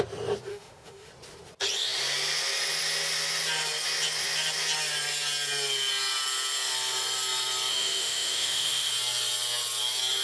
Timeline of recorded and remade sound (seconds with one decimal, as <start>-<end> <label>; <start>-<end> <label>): 0.0-0.5 recorded; 0.5-1.1 remade; 1.1-7.7 recorded; 7.7-8.9 remade; 8.9-10.2 recorded